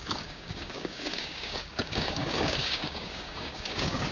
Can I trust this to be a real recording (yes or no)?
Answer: no